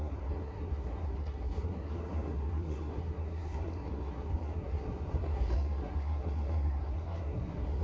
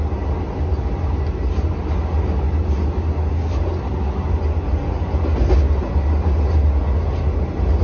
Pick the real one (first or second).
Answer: second